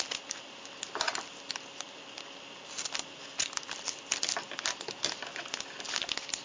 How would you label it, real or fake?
real